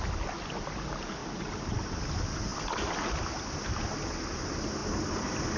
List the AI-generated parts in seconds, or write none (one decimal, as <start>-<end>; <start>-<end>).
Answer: 1.2-2.0